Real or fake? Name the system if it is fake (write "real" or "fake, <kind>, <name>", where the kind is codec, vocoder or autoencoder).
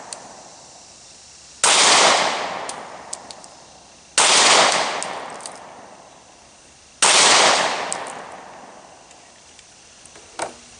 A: real